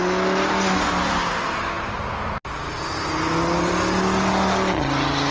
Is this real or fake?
real